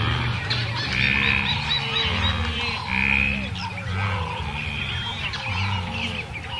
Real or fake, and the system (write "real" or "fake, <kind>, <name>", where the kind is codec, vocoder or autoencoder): real